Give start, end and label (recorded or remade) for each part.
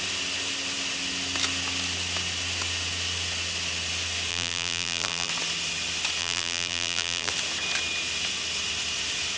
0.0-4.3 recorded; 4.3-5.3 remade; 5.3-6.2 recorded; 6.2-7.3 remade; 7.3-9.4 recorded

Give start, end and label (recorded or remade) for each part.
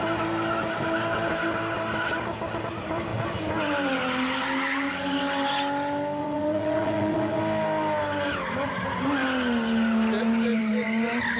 0.0-6.2 recorded; 6.2-7.4 remade; 7.4-11.4 recorded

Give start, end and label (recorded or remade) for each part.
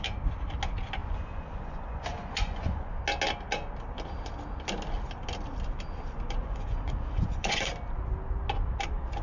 0.0-1.0 recorded; 1.0-3.0 remade; 3.0-6.4 recorded; 6.4-7.7 remade; 7.7-9.2 recorded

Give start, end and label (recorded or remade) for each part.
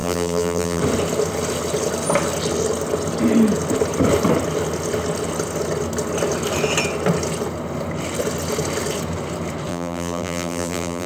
0.0-0.8 remade; 0.8-9.7 recorded; 9.7-11.1 remade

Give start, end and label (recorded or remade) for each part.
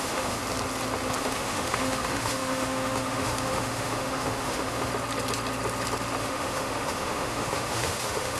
0.0-0.4 remade; 0.4-1.2 recorded; 1.2-4.9 remade; 4.9-6.2 recorded; 6.2-8.4 remade